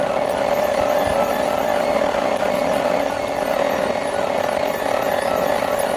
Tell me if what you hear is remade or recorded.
recorded